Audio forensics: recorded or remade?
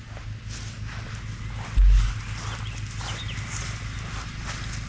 recorded